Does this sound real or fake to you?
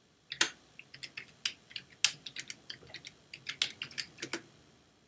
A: real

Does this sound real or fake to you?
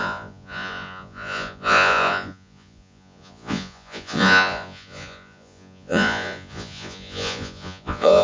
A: fake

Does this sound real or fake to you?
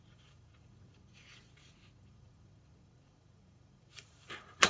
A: fake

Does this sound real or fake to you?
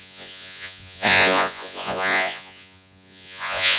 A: fake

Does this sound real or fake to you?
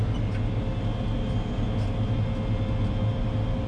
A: real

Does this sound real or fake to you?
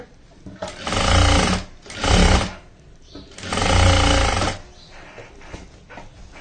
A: real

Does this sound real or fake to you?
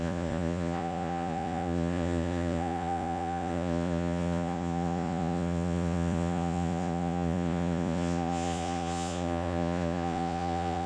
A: fake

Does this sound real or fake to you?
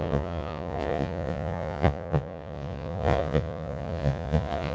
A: fake